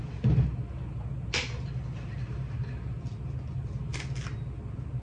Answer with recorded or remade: recorded